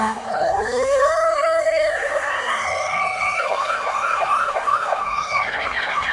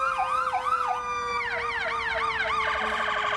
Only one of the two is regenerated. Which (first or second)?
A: first